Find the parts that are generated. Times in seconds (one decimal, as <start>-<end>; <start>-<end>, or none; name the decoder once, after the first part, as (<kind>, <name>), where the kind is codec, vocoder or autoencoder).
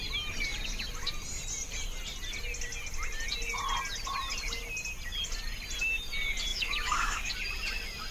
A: 6.5-7.3 (autoencoder, DAC-VAE)